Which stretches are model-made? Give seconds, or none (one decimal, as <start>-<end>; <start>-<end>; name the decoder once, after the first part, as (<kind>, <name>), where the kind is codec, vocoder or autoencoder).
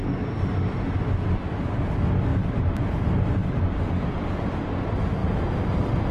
2.3-3.6 (vocoder, BigVGAN v2)